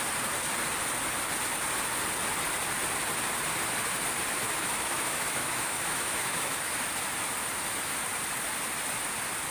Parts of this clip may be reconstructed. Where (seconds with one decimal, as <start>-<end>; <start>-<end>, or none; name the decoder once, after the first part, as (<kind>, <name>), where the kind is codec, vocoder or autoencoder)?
4.4-6.8 (autoencoder, DAC-VAE)